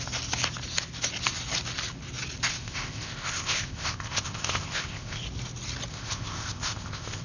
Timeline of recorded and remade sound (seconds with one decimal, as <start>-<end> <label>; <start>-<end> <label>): 0.0-2.5 recorded; 2.5-5.2 remade; 5.2-5.9 recorded; 5.9-7.2 remade